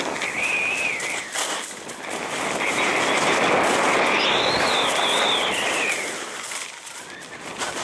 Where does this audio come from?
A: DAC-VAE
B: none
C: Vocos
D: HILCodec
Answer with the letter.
B